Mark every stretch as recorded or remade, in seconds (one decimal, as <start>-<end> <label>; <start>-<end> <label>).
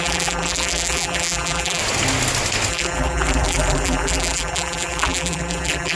0.0-1.8 remade; 1.8-2.7 recorded; 2.7-6.0 remade